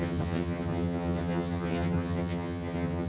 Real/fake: fake